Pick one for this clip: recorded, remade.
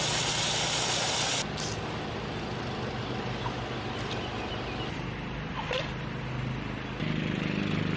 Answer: recorded